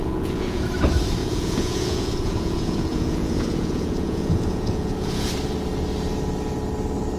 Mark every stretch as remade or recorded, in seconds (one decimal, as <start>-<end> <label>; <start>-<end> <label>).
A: 0.0-0.6 remade; 0.6-1.2 recorded; 1.2-5.3 remade; 5.3-7.2 recorded

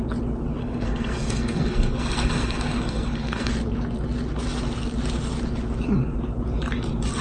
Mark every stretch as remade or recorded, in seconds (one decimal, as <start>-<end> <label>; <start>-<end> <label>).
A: 0.0-0.6 recorded; 0.6-3.5 remade; 3.5-7.2 recorded

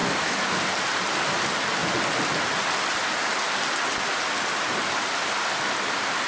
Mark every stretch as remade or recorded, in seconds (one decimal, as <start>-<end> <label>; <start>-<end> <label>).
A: 0.0-0.6 remade; 0.6-6.3 recorded

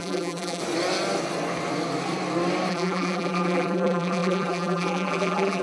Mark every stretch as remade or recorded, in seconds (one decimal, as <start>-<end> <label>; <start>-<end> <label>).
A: 0.0-0.6 remade; 0.6-2.7 recorded; 2.7-5.6 remade

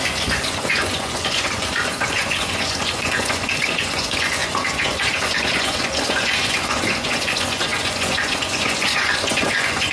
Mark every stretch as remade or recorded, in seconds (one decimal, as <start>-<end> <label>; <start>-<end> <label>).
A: 0.0-9.9 remade

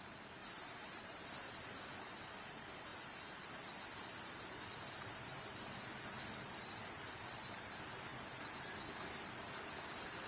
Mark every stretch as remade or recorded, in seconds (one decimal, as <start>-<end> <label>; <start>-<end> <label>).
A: 0.0-0.4 recorded; 0.4-1.2 remade; 1.2-10.3 recorded

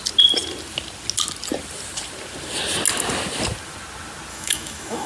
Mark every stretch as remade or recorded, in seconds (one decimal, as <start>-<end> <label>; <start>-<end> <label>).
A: 0.0-4.3 recorded; 4.3-5.1 remade